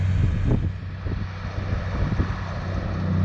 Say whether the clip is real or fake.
real